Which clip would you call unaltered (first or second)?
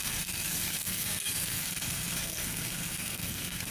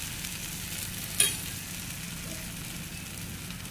second